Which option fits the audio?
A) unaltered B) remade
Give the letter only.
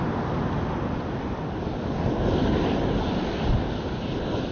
A